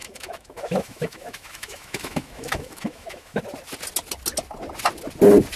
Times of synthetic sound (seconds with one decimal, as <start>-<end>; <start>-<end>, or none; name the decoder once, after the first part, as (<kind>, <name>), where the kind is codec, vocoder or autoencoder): 0.0-3.4 (autoencoder, DAC-VAE)